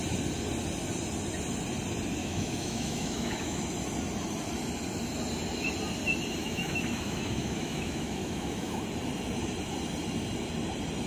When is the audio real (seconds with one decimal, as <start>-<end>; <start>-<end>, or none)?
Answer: 0.0-2.2; 3.6-6.4; 8.8-11.1